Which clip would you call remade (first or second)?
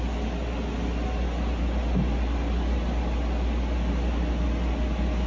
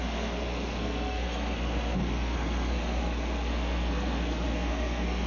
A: second